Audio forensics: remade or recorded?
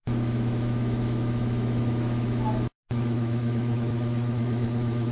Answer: remade